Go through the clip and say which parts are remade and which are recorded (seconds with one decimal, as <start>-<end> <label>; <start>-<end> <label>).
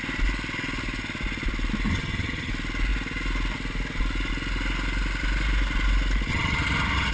0.0-1.9 recorded; 1.9-2.5 remade; 2.5-6.3 recorded; 6.3-7.1 remade